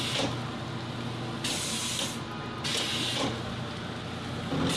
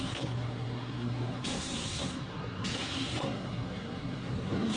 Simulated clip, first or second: second